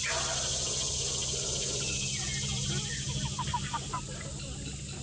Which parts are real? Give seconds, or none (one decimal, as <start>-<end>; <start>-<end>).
0.0-5.0